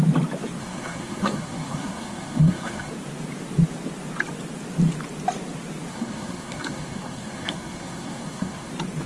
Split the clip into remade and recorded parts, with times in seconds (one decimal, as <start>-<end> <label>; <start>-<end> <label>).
0.0-0.6 recorded; 0.6-2.9 remade; 2.9-5.9 recorded; 5.9-8.7 remade; 8.7-9.1 recorded